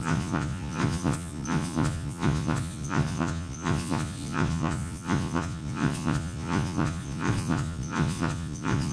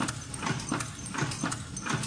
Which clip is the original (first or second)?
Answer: second